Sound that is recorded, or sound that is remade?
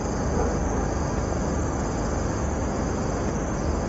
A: recorded